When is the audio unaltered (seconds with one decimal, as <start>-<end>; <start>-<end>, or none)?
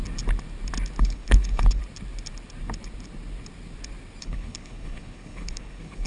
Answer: 0.0-1.0; 1.8-4.2